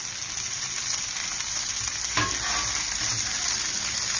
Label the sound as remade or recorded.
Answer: recorded